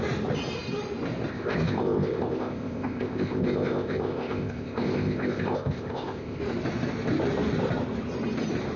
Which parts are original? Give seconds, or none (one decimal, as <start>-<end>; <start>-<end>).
0.0-1.3; 6.4-8.8